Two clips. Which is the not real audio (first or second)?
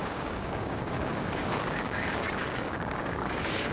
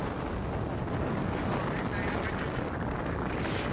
first